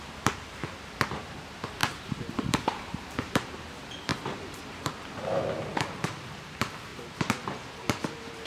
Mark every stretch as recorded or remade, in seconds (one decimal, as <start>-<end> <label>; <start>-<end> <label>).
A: 0.0-1.8 recorded; 1.8-3.6 remade; 3.6-4.1 recorded; 4.1-5.4 remade; 5.4-8.5 recorded